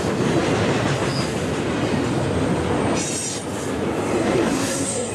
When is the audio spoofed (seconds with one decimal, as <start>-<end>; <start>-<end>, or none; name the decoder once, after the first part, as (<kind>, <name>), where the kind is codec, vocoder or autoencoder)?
4.2-5.1 (codec, SNAC)